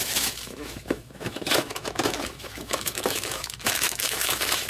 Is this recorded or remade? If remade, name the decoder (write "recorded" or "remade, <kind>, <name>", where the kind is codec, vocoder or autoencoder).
remade, autoencoder, DAC-VAE